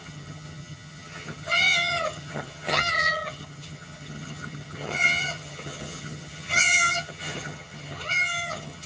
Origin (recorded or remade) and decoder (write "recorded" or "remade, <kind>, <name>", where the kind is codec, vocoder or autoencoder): remade, vocoder, HiFi-GAN